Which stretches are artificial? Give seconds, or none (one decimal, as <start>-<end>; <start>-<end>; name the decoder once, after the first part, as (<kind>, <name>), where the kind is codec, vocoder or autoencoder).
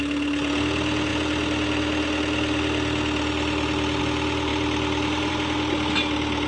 none